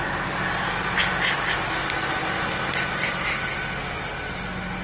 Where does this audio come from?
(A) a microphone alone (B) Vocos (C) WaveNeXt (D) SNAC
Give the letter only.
A